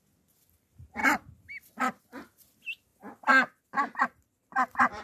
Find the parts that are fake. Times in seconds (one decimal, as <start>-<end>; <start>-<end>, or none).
none